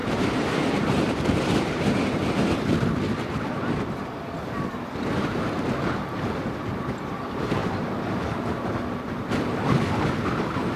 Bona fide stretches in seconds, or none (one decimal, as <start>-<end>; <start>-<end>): 2.5-7.6; 8.2-10.8

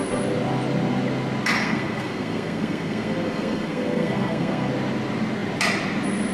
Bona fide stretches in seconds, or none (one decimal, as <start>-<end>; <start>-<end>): 0.0-1.6; 4.7-6.3

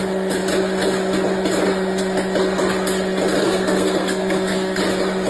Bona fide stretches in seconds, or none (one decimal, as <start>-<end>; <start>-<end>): 0.0-3.4; 4.8-5.3

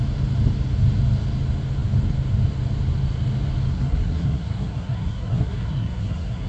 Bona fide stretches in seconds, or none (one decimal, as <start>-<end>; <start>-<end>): 0.0-3.7

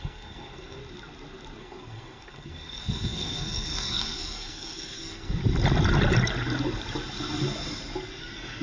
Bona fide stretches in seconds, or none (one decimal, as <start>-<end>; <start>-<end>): 0.8-1.6; 5.4-8.2

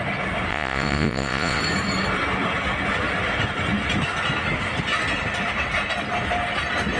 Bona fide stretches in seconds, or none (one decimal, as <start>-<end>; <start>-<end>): 0.0-0.5; 1.6-7.0

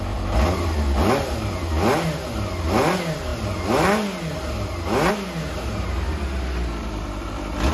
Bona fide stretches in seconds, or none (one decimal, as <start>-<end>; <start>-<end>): 0.0-7.7